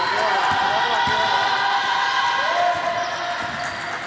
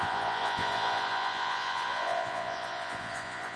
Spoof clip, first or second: second